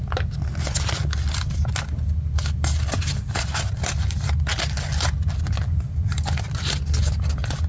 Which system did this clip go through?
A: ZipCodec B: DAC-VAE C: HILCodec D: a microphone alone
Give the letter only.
D